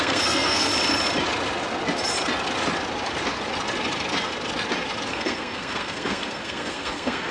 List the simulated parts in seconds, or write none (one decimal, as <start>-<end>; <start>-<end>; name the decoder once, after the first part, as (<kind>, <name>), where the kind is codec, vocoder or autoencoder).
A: 0.0-0.7 (codec, SNAC); 5.1-7.3